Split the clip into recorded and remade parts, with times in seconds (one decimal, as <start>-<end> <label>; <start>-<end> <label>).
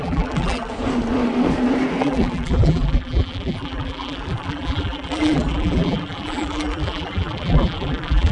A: 0.0-0.7 remade; 0.7-2.0 recorded; 2.0-8.3 remade